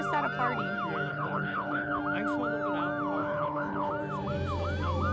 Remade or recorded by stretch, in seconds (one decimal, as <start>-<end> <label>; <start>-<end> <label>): 0.0-1.1 recorded; 1.1-2.0 remade; 2.0-3.2 recorded; 3.2-3.9 remade; 3.9-5.1 recorded

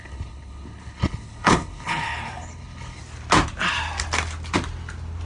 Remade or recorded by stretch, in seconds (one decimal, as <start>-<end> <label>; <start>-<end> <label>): 0.0-3.0 remade; 3.0-5.3 recorded

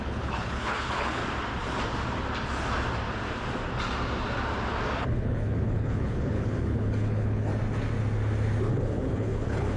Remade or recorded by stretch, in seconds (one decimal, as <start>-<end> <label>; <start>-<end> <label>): 0.0-1.2 remade; 1.2-5.0 recorded; 5.0-7.5 remade; 7.5-8.7 recorded; 8.7-9.8 remade

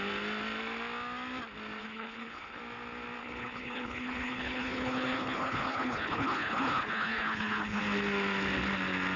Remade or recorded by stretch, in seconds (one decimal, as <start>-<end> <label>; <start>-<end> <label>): 0.0-1.8 recorded; 1.8-2.6 remade; 2.6-3.2 recorded; 3.2-7.8 remade; 7.8-9.2 recorded